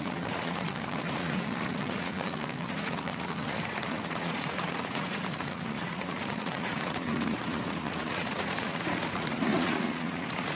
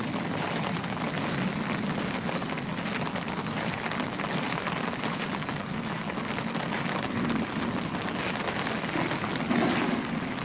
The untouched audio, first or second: second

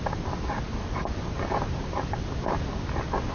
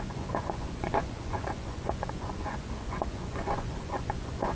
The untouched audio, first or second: first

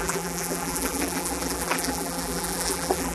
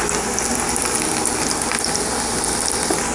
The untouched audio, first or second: second